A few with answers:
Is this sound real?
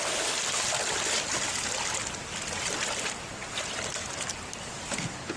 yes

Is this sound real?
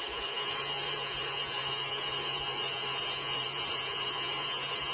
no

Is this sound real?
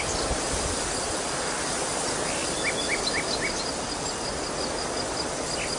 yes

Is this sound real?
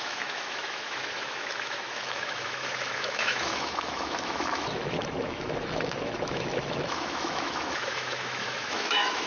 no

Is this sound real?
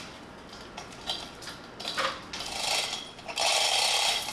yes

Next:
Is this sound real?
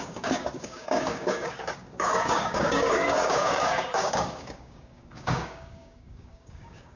no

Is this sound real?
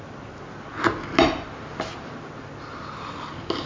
yes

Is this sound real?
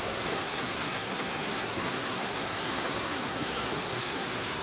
no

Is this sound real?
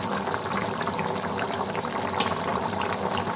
no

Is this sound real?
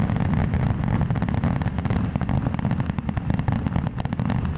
yes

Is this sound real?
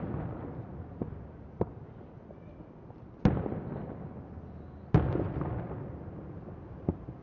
yes